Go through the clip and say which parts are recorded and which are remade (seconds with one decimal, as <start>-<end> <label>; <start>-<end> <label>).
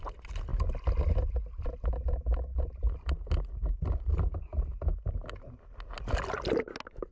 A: 0.0-7.1 recorded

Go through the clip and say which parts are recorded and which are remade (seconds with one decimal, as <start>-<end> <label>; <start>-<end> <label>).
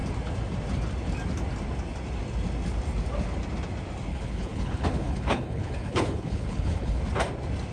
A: 0.0-4.1 recorded; 4.1-7.0 remade; 7.0-7.7 recorded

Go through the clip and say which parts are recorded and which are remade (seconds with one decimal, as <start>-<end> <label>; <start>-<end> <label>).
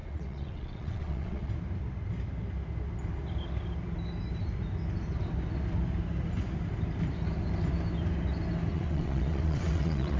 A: 0.0-1.5 remade; 1.5-8.7 recorded; 8.7-10.2 remade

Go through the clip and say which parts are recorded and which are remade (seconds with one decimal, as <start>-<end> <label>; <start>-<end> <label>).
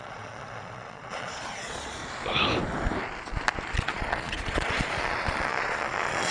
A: 0.0-2.0 remade; 2.0-3.8 recorded; 3.8-6.3 remade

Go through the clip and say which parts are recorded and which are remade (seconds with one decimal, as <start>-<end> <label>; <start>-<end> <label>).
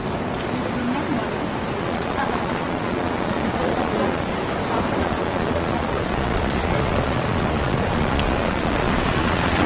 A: 0.0-1.8 recorded; 1.8-4.3 remade; 4.3-5.0 recorded; 5.0-9.7 remade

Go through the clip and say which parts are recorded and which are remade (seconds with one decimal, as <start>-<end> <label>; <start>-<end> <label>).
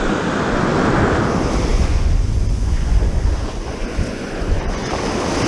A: 0.0-1.7 recorded; 1.7-4.9 remade; 4.9-5.5 recorded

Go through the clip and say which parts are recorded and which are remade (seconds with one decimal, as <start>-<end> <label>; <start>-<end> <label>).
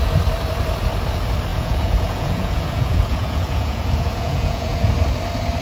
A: 0.0-1.5 recorded; 1.5-4.9 remade; 4.9-5.6 recorded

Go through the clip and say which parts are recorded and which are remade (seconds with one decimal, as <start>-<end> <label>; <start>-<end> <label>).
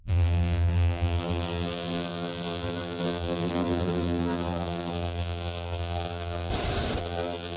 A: 0.0-6.5 remade; 6.5-7.0 recorded; 7.0-7.6 remade